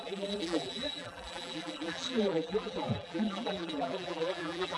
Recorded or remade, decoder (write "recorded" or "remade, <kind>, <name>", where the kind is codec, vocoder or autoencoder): remade, vocoder, BigVGAN v2